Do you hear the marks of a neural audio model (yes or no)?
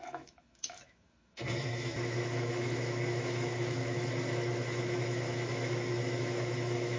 yes